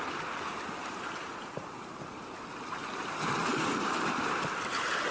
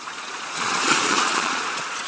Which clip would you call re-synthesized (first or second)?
second